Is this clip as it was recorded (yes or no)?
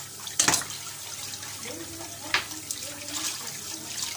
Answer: no